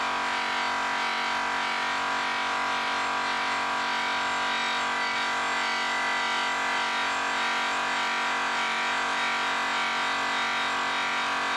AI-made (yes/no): no